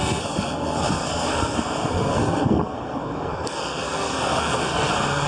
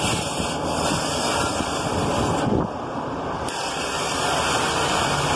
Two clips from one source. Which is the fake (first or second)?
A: first